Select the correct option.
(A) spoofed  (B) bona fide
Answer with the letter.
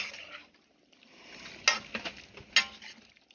B